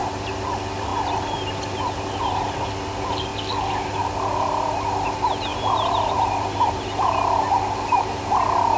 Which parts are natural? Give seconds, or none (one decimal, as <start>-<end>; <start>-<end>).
0.5-5.5; 7.4-8.8